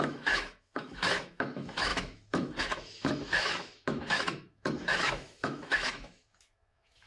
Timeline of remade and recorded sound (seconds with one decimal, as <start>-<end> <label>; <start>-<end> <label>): 0.0-7.1 remade